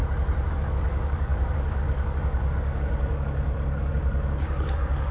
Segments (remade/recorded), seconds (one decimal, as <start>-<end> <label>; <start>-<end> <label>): 0.0-0.5 recorded; 0.5-5.1 remade